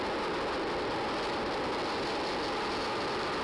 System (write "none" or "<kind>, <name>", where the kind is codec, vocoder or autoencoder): none